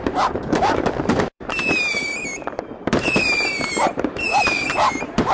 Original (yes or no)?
no